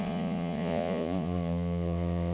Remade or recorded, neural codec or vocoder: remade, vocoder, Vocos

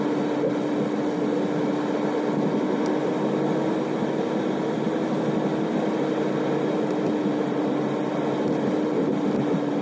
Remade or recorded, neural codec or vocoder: recorded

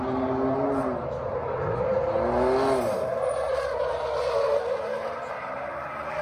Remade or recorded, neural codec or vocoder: recorded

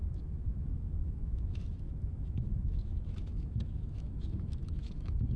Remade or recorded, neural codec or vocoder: remade, autoencoder, DAC-VAE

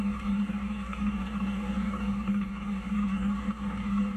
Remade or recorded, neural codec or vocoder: remade, codec, DAC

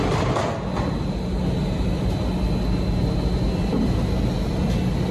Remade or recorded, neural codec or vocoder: recorded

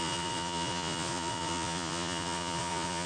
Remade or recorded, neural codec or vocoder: remade, vocoder, Vocos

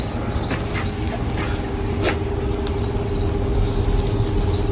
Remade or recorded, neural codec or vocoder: recorded